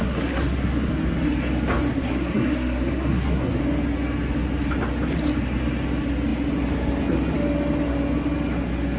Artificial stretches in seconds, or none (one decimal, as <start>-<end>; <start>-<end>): 0.0-0.9; 1.9-3.6